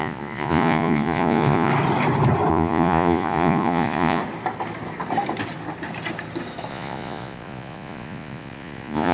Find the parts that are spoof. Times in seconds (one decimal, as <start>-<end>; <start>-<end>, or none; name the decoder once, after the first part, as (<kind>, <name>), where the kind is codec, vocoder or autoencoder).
0.0-1.7 (vocoder, Vocos); 2.5-4.2; 6.7-9.1

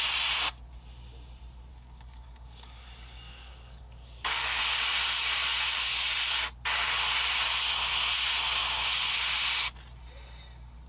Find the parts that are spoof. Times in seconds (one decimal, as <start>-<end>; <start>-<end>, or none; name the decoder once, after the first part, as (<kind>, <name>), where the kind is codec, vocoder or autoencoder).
1.7-4.6 (codec, DAC)

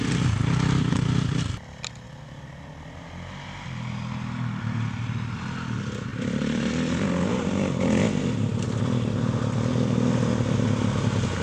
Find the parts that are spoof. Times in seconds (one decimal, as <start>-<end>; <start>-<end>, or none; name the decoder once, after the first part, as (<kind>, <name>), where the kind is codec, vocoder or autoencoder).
none

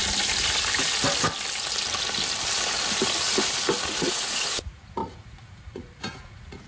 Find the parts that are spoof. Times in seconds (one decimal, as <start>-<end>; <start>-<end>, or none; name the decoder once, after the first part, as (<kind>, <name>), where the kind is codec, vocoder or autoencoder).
3.8-6.7 (vocoder, Vocos)

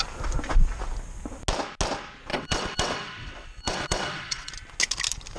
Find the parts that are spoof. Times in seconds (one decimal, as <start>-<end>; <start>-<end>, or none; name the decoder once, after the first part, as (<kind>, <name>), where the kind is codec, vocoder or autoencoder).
2.3-4.5 (vocoder, WaveNeXt)